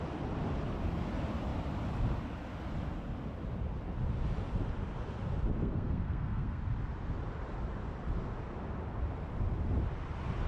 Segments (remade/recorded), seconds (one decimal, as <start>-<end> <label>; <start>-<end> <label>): 0.0-5.6 recorded; 5.6-6.6 remade; 6.6-10.5 recorded

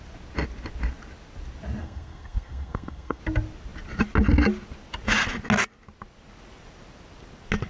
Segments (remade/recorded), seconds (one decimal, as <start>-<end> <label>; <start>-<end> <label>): 0.0-1.8 recorded; 1.8-3.2 remade; 3.2-7.7 recorded

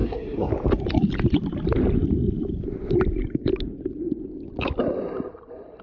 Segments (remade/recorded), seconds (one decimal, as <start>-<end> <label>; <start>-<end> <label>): 0.0-0.5 remade; 0.5-5.8 recorded

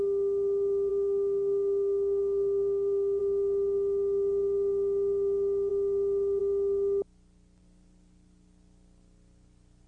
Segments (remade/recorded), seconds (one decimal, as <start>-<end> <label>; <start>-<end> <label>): 0.0-0.9 recorded; 0.9-3.2 remade; 3.2-9.9 recorded

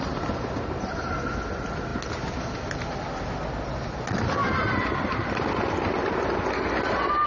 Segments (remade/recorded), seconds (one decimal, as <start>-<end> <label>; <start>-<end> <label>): 0.0-7.3 recorded

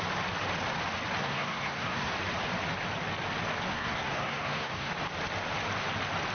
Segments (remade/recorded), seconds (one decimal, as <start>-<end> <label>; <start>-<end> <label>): 0.0-1.2 recorded; 1.2-2.1 remade; 2.1-3.7 recorded; 3.7-4.9 remade; 4.9-6.3 recorded

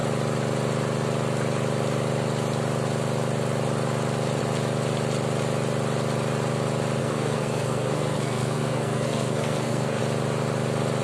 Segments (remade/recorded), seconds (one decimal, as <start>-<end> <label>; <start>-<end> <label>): 0.0-7.0 recorded; 7.0-10.0 remade; 10.0-11.0 recorded

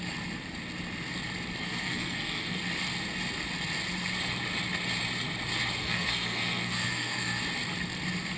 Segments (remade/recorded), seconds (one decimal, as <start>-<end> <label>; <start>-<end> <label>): 0.0-1.6 recorded; 1.6-2.6 remade; 2.6-5.8 recorded; 5.8-7.4 remade; 7.4-8.4 recorded